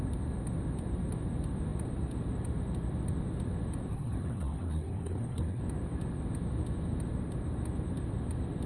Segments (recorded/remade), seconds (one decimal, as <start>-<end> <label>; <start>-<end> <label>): 0.0-3.9 recorded; 3.9-5.6 remade; 5.6-8.7 recorded